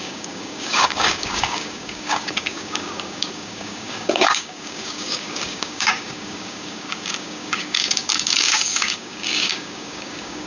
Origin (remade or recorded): remade